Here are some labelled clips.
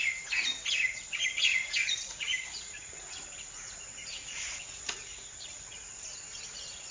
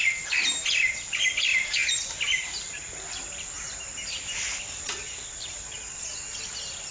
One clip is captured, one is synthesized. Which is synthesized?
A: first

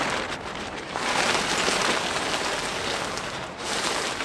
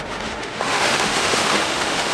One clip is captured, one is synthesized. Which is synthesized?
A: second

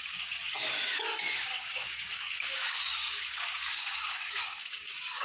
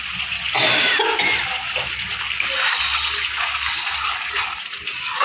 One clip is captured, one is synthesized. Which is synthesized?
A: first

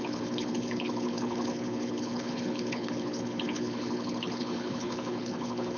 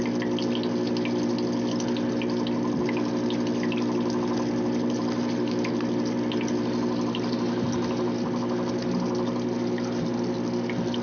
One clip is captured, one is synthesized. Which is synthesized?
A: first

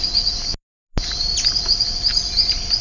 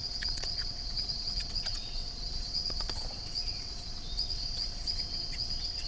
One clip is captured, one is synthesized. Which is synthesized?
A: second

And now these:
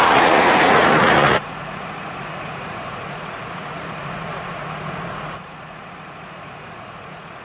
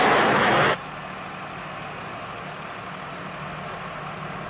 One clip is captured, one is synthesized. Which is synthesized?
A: first